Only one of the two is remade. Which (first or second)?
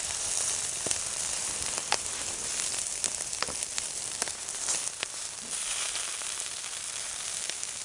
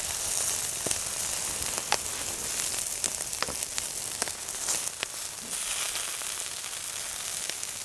first